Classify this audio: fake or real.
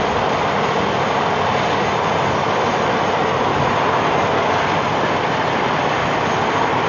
real